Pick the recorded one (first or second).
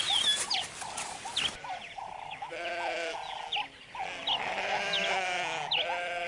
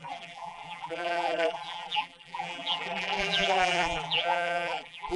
first